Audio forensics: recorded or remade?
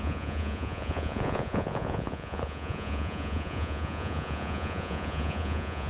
remade